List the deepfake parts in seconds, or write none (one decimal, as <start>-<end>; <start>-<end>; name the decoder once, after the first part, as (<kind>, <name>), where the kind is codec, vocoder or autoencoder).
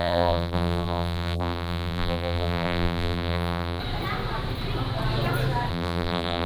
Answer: 0.0-3.8 (vocoder, BigVGAN v2); 5.7-6.5